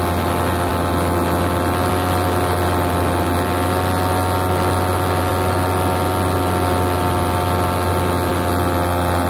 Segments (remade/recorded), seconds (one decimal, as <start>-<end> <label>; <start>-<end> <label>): 0.0-9.3 recorded